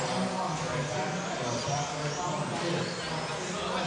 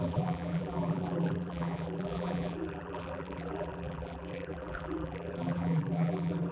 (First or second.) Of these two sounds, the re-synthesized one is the second